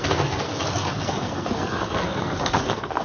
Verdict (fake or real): fake